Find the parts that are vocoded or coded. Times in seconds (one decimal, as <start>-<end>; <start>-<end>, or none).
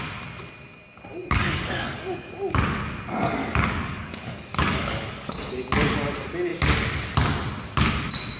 1.2-2.3; 3.4-5.5